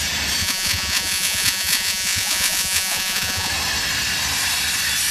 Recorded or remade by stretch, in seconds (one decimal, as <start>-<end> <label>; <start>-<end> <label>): 0.0-0.4 recorded; 0.4-3.5 remade; 3.5-5.1 recorded